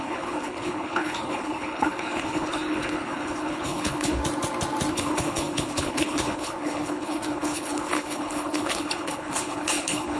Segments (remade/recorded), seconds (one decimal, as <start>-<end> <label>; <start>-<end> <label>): 0.0-4.2 remade; 4.2-4.9 recorded; 4.9-10.2 remade